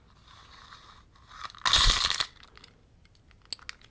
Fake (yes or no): no